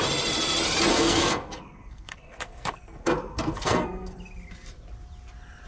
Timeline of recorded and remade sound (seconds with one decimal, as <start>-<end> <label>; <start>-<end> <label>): 0.0-0.9 recorded; 0.9-4.2 remade; 4.2-5.7 recorded